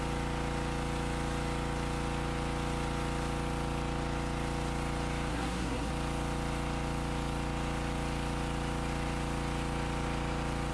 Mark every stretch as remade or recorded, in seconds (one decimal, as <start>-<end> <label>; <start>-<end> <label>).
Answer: 0.0-5.3 recorded; 5.3-5.9 remade; 5.9-10.7 recorded